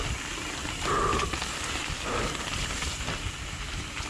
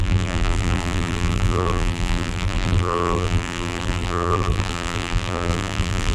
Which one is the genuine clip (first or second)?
first